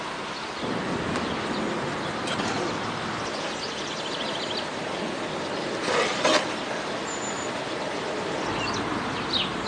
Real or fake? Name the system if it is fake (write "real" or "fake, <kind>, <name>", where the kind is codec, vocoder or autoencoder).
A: real